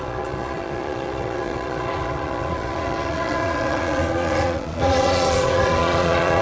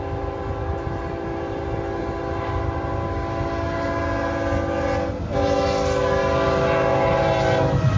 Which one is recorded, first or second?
second